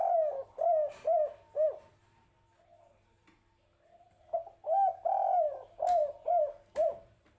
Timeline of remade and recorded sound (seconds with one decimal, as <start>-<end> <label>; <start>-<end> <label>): 0.0-7.4 recorded